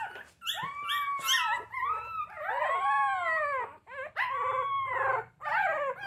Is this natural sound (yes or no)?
yes